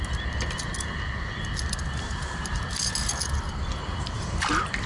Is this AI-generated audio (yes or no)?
no